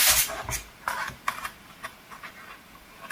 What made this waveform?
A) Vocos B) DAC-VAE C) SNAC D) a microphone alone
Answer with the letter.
D